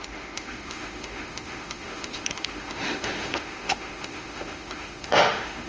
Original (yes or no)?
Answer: no